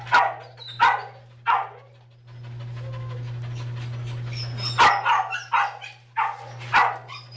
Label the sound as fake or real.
real